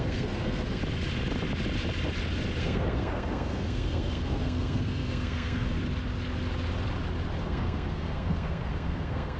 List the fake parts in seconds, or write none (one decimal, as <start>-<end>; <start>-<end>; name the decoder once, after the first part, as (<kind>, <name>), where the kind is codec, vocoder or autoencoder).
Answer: 0.0-0.8 (codec, SNAC); 2.6-5.8; 7.4-9.4